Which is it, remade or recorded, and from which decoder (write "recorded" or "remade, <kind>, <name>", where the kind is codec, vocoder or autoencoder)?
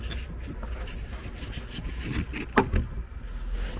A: recorded